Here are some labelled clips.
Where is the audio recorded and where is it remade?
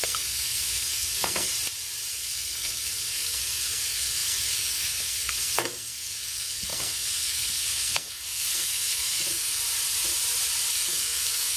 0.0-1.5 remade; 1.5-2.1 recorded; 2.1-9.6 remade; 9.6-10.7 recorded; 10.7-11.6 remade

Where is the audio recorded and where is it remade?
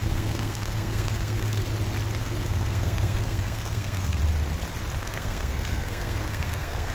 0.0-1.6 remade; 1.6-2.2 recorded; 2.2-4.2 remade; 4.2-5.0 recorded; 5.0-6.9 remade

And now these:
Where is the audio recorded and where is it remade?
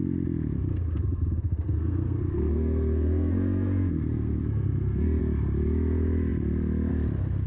0.0-0.7 recorded; 0.7-5.2 remade; 5.2-7.5 recorded